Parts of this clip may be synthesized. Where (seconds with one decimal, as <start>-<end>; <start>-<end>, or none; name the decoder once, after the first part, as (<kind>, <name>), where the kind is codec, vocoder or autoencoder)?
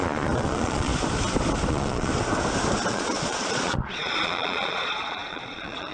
0.0-0.9 (vocoder, Vocos); 1.7-2.1; 2.9-5.9